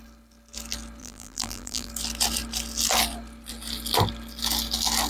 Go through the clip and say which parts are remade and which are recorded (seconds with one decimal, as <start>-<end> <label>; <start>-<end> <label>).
0.0-1.0 recorded; 1.0-1.9 remade; 1.9-5.1 recorded